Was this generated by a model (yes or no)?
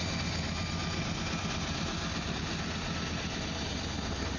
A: no